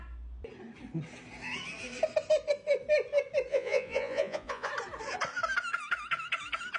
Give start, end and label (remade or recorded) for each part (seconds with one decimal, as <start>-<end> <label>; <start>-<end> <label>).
0.0-3.5 recorded; 3.5-4.7 remade; 4.7-6.8 recorded